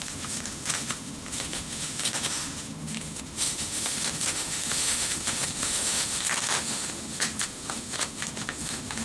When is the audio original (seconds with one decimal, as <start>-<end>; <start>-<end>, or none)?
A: none